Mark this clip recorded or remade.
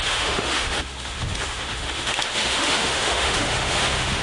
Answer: remade